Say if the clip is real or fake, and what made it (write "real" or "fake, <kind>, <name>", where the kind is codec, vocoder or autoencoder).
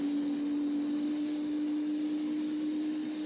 real